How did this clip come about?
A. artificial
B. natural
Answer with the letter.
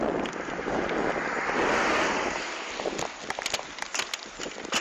B